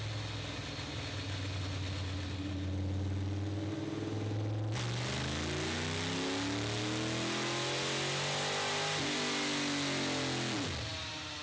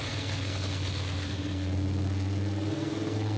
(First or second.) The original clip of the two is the first